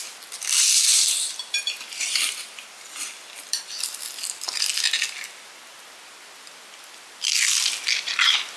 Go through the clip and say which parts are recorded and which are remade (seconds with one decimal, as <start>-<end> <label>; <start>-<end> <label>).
0.0-0.9 recorded; 0.9-3.8 remade; 3.8-8.6 recorded